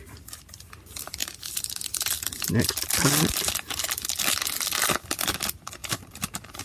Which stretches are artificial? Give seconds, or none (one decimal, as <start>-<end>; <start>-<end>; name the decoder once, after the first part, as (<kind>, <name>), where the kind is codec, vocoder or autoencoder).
5.8-6.6 (vocoder, BigVGAN v2)